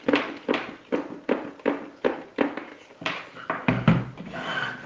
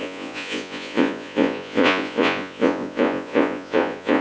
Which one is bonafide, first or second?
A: first